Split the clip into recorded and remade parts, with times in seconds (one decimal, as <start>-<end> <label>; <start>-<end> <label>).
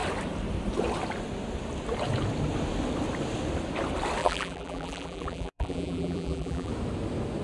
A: 0.0-4.2 recorded; 4.2-6.7 remade; 6.7-7.4 recorded